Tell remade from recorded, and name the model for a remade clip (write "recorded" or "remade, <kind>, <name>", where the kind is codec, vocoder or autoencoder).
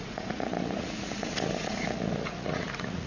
remade, vocoder, Vocos